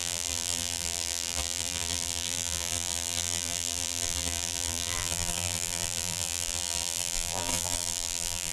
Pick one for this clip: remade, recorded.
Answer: remade